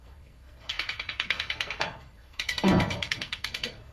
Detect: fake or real fake